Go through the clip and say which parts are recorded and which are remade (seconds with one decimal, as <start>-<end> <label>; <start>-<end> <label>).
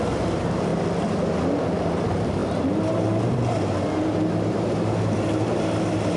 0.0-0.7 remade; 0.7-1.6 recorded; 1.6-6.2 remade